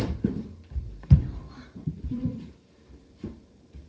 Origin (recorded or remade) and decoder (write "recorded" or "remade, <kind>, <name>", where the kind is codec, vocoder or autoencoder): remade, vocoder, BigVGAN v2